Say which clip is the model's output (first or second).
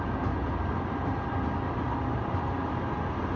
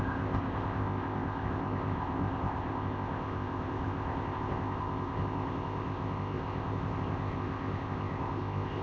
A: second